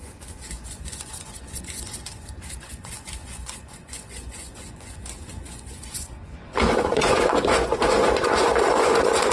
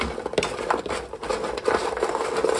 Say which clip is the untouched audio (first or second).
second